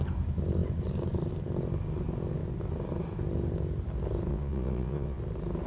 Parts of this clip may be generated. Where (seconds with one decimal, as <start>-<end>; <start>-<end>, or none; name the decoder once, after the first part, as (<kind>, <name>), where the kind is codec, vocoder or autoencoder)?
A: 4.3-5.2 (vocoder, WaveNeXt)